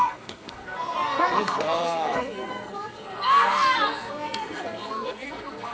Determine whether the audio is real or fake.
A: fake